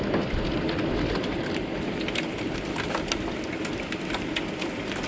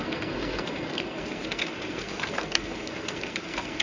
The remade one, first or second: second